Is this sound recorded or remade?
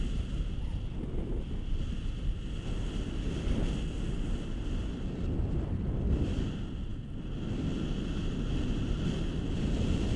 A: recorded